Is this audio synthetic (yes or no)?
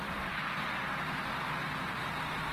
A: no